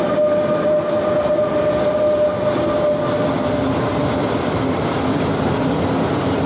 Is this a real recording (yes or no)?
yes